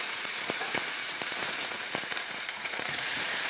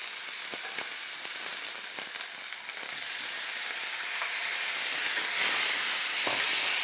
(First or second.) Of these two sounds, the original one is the second